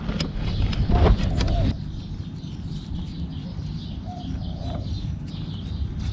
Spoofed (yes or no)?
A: no